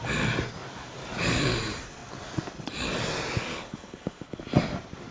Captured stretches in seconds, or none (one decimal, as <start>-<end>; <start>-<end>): 0.0-3.5; 4.4-5.1